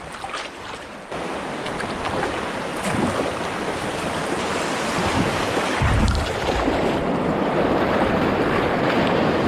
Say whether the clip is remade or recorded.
recorded